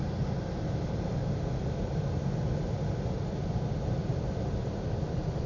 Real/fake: real